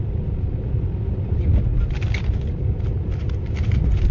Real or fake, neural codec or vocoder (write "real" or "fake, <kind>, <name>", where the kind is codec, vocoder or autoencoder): real